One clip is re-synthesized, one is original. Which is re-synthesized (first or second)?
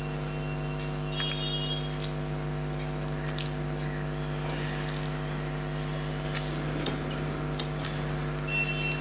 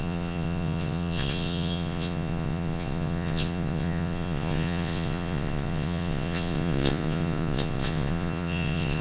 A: second